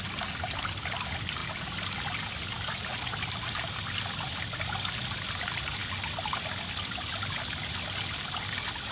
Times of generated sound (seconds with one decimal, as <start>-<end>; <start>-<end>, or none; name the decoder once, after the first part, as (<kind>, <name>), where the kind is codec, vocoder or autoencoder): none